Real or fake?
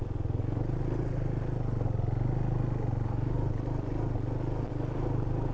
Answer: real